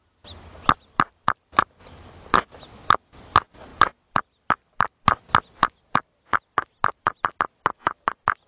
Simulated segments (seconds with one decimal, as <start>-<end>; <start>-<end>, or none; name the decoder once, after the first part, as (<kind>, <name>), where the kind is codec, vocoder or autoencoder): none